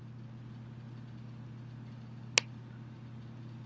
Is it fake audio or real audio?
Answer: real